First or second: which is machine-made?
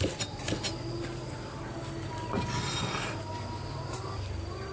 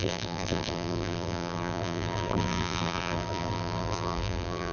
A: second